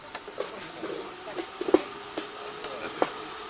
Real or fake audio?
real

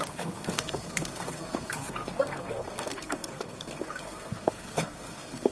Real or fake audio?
fake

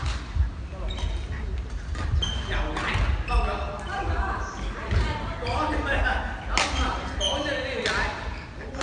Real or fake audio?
real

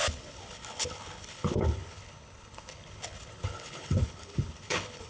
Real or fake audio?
fake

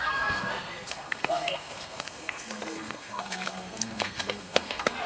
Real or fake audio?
fake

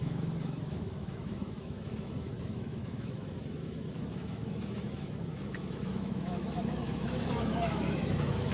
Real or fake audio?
fake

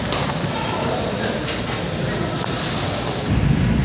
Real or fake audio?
real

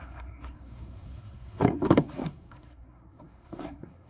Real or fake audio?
fake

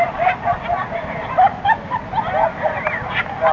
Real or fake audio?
real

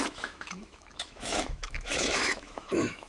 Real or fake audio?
fake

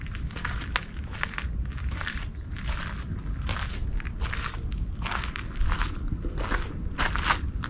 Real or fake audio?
real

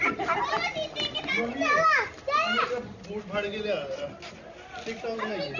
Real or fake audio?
real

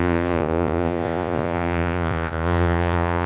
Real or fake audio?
fake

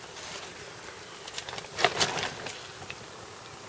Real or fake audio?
real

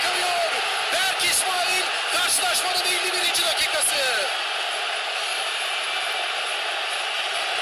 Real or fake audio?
real